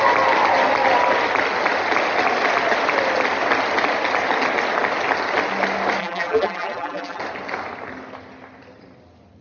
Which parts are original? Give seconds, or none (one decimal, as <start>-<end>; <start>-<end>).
0.0-6.0; 7.2-9.4